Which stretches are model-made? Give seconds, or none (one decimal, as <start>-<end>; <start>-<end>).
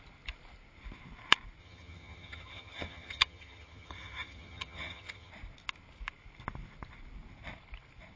1.6-5.3